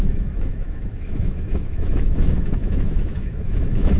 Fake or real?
fake